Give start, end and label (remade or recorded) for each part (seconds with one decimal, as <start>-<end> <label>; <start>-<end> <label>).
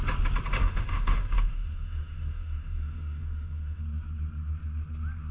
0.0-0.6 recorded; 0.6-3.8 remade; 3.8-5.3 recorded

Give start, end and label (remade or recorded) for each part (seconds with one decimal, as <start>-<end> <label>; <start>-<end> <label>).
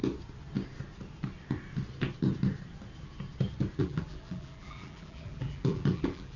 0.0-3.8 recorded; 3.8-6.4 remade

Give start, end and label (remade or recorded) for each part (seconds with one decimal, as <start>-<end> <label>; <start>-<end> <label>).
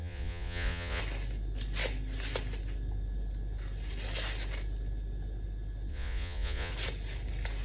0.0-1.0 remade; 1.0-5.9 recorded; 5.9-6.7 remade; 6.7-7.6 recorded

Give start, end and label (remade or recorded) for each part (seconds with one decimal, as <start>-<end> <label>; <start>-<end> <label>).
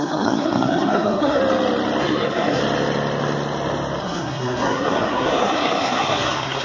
0.0-1.4 remade; 1.4-2.0 recorded; 2.0-2.6 remade; 2.6-4.0 recorded; 4.0-6.6 remade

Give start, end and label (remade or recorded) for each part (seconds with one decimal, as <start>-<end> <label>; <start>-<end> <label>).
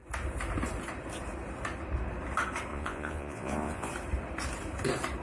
0.0-2.7 recorded; 2.7-3.9 remade; 3.9-5.2 recorded